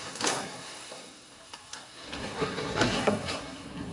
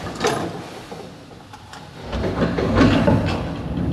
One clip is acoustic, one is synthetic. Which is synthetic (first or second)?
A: first